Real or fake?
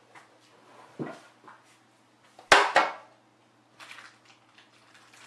real